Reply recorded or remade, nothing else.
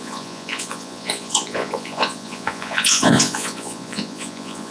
remade